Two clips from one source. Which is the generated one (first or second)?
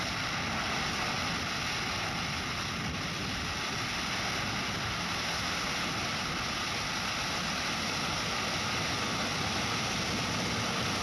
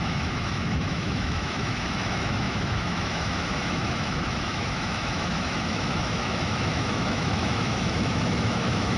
second